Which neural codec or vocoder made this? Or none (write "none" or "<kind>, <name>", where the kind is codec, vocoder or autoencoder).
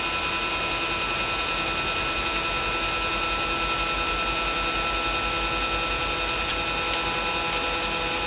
none